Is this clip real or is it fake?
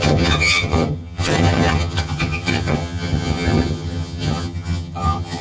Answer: fake